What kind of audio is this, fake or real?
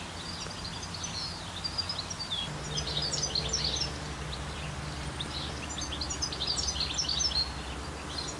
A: real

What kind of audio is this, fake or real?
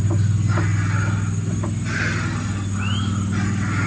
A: real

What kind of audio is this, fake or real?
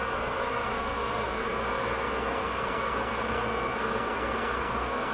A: fake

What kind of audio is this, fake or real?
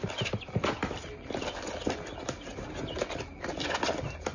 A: real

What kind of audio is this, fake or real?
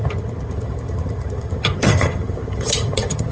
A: fake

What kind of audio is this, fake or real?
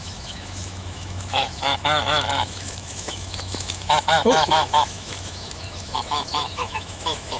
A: fake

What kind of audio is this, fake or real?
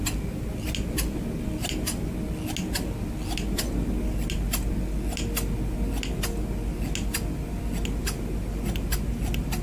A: real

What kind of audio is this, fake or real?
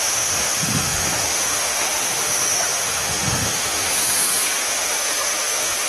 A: fake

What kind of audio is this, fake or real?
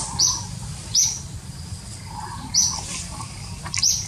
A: fake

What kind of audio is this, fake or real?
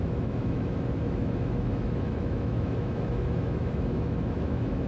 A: fake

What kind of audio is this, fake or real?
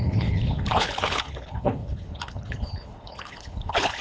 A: fake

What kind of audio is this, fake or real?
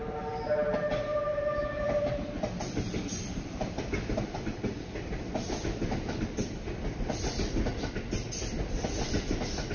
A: real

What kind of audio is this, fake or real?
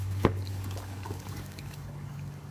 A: fake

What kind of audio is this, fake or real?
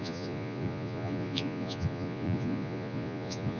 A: fake